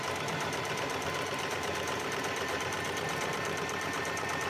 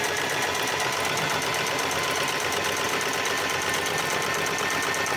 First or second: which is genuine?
second